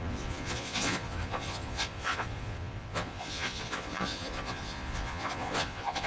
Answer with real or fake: fake